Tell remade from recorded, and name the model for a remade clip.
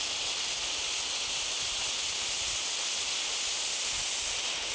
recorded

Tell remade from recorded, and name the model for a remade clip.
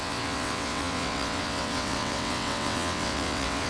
remade, vocoder, WaveNeXt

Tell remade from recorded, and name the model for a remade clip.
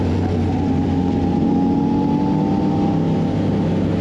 recorded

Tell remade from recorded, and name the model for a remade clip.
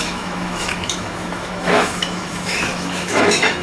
remade, autoencoder, DAC-VAE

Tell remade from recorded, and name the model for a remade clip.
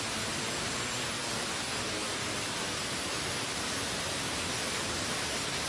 recorded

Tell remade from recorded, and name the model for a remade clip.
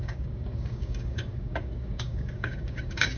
remade, codec, DAC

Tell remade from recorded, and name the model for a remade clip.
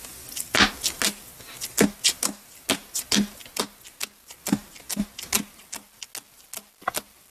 recorded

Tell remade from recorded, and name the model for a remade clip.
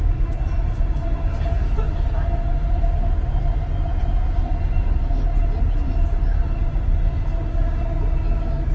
recorded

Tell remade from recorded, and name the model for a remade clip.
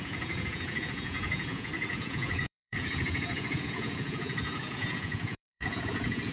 remade, vocoder, Vocos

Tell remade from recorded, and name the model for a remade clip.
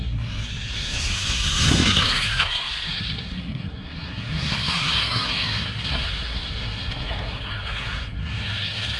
remade, codec, SNAC